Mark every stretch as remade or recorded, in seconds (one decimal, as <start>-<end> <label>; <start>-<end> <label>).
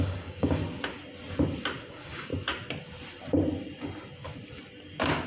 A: 0.0-0.6 remade; 0.6-1.9 recorded; 1.9-2.3 remade; 2.3-5.3 recorded